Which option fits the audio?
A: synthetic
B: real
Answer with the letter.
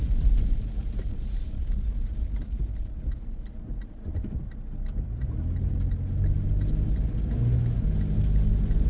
B